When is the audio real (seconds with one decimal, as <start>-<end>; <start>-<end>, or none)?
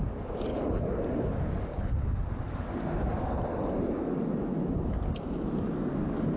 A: 0.0-0.5; 1.0-1.7; 2.3-6.4